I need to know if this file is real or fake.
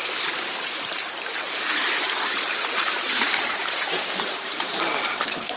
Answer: fake